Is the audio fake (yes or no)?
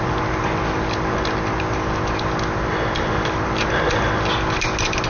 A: no